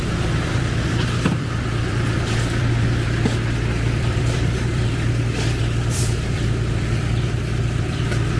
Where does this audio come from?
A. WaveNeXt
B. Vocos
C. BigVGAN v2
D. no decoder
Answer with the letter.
C